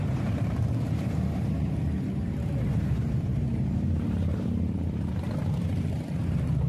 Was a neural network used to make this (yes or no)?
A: yes